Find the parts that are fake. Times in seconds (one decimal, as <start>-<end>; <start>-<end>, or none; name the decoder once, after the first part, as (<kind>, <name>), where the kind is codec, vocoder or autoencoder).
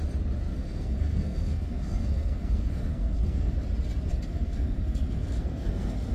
0.5-3.5 (codec, SNAC); 4.1-6.1